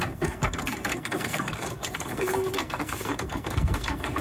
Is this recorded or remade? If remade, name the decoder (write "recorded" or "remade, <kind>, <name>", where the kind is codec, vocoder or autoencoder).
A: remade, codec, SNAC